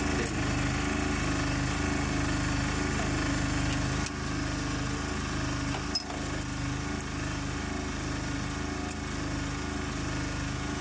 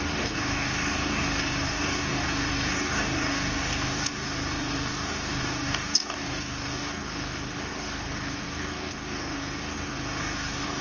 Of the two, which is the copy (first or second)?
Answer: second